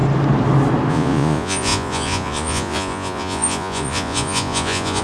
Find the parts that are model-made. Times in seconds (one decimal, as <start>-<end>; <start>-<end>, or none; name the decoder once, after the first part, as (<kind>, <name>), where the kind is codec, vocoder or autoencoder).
0.9-5.0 (vocoder, Vocos)